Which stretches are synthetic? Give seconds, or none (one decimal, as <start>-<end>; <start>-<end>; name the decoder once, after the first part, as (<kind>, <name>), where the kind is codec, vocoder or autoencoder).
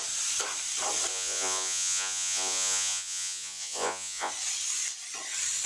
1.1-4.3 (vocoder, Vocos)